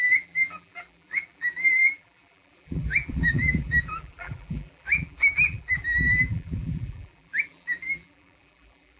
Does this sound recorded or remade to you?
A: remade